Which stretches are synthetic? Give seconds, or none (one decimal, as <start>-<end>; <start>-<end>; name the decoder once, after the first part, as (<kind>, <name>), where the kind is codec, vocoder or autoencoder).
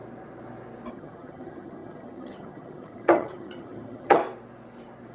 0.9-4.2 (vocoder, HiFi-GAN)